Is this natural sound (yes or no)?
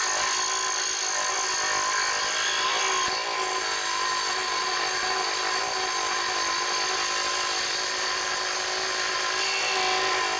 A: yes